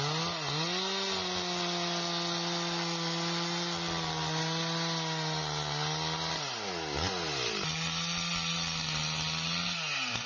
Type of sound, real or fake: real